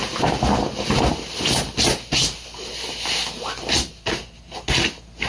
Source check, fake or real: real